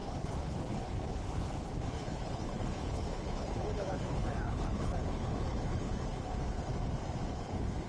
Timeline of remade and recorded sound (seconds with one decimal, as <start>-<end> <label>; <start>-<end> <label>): 0.0-6.7 remade; 6.7-7.3 recorded; 7.3-7.9 remade